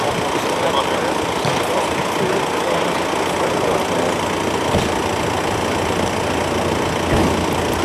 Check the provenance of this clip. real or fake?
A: real